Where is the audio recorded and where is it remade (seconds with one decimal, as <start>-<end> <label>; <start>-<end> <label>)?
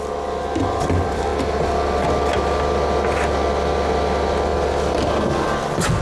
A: 0.0-6.0 recorded